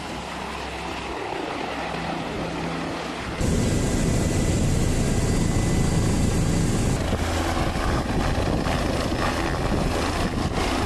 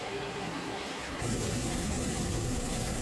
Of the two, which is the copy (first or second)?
second